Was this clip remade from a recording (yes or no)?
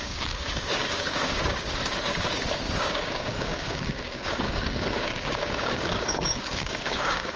yes